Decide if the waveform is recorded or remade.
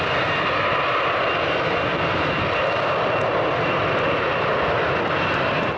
recorded